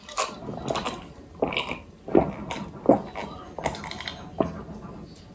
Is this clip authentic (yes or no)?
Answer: yes